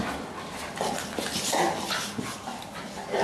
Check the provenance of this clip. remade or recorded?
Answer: recorded